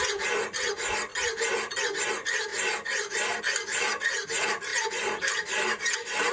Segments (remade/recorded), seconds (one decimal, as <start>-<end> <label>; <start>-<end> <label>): 0.0-6.3 recorded